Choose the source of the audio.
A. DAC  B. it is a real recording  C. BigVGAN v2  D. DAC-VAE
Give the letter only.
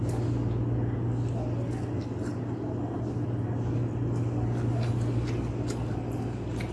B